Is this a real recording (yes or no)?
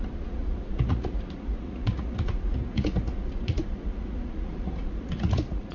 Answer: no